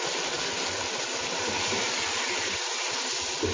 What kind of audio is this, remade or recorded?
recorded